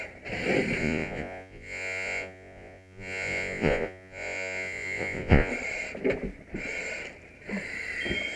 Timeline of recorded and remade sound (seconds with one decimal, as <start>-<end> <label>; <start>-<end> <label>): 0.0-0.8 recorded; 0.8-5.5 remade; 5.5-8.4 recorded